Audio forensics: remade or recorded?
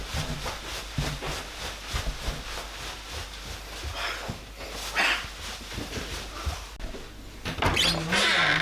recorded